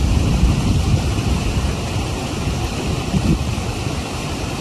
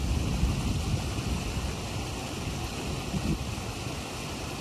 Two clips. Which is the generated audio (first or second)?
first